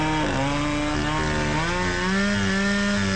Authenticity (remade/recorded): recorded